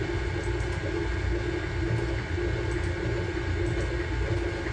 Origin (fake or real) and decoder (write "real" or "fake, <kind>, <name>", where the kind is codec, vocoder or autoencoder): real